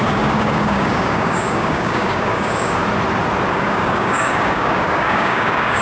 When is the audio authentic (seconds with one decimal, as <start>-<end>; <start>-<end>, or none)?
2.8-3.5